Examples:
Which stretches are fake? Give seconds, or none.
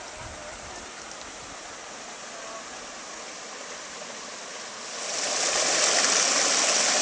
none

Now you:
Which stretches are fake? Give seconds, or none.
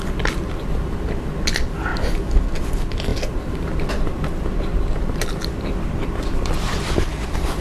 1.9-2.6 (vocoder, BigVGAN v2); 3.1-6.8